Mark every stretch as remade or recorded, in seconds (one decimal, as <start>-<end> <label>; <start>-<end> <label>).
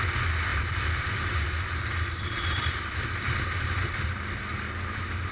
0.0-0.5 recorded; 0.5-3.7 remade; 3.7-4.5 recorded; 4.5-5.3 remade